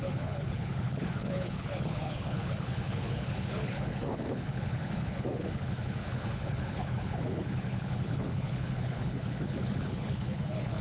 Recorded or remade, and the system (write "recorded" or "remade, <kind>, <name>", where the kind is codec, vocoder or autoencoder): remade, codec, HILCodec